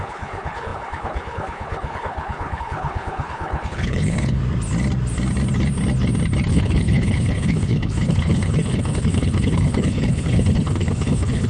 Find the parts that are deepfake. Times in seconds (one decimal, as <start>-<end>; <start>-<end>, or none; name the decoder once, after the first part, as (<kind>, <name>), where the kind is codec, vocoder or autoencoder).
0.0-4.4 (codec, HILCodec); 6.5-11.5